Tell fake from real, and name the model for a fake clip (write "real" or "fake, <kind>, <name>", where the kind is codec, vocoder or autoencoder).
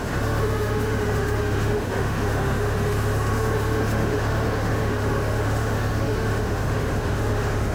fake, autoencoder, DAC-VAE